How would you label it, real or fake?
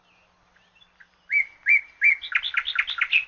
real